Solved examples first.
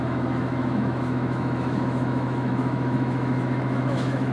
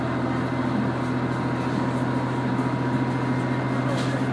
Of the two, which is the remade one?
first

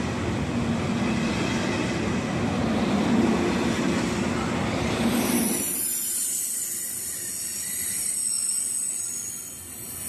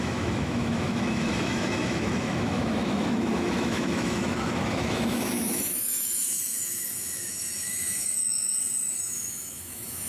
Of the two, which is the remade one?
second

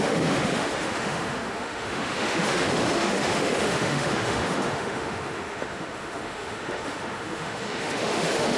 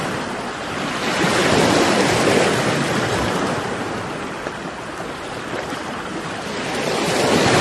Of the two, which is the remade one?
first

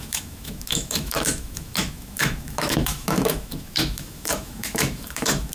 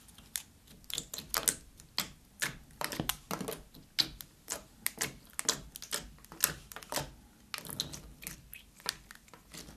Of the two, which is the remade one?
first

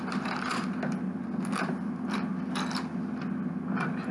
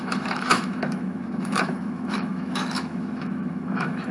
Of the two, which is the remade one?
second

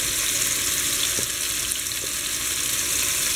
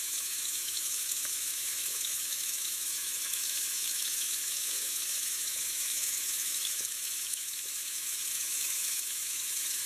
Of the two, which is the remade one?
second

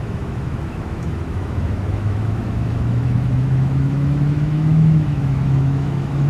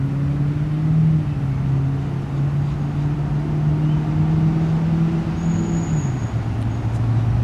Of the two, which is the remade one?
first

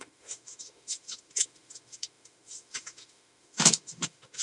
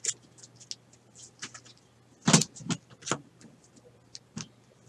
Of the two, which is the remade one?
first